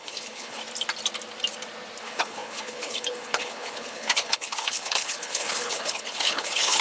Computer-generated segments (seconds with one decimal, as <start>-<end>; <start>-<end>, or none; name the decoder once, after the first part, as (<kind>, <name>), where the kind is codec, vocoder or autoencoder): 0.0-0.6 (codec, HILCodec); 2.0-6.8